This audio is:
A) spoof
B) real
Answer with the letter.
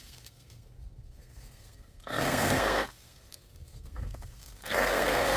A